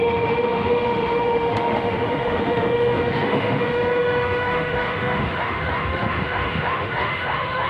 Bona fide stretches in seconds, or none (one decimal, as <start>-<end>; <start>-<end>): none